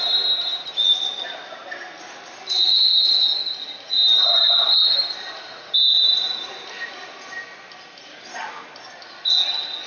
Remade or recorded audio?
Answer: recorded